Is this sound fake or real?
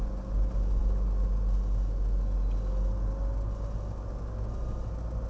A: real